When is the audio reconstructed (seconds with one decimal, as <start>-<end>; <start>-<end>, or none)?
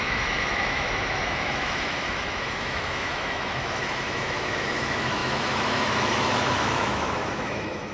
0.0-7.9